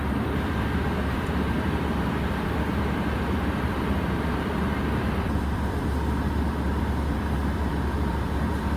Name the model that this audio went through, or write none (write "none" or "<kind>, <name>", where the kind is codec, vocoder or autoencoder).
vocoder, BigVGAN v2